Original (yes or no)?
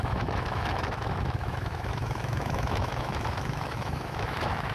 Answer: no